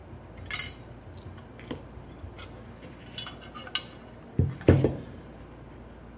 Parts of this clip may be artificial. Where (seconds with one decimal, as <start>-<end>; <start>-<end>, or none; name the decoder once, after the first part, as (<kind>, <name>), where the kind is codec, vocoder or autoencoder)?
none